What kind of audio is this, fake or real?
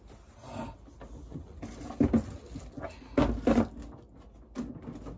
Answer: real